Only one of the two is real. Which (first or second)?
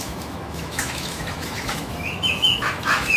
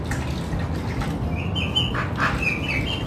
second